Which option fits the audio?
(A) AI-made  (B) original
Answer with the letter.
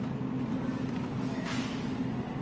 B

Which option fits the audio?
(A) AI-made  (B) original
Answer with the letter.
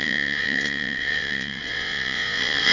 A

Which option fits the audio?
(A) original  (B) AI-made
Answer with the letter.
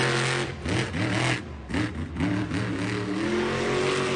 A